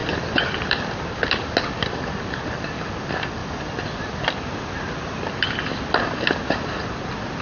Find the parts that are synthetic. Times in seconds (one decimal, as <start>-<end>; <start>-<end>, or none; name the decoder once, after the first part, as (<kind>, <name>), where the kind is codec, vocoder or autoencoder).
0.0-1.0 (vocoder, BigVGAN v2); 3.4-5.2